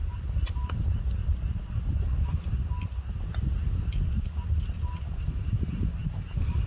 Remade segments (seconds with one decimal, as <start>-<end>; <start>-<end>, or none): 0.0-1.2; 5.2-6.7